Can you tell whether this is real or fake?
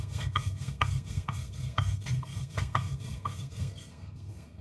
fake